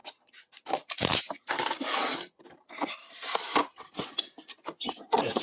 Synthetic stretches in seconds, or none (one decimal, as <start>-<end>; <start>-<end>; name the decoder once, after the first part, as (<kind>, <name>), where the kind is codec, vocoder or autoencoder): 0.0-3.6 (vocoder, BigVGAN v2); 4.9-5.4